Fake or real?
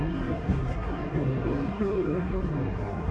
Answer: fake